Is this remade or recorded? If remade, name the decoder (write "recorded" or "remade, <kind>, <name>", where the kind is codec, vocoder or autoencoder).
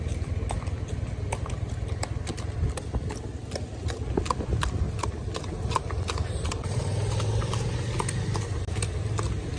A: recorded